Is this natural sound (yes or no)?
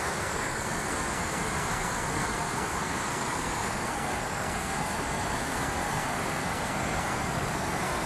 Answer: no